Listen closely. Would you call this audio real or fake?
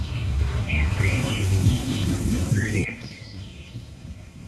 fake